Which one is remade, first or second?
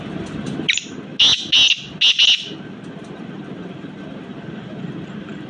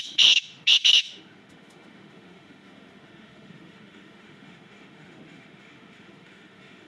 second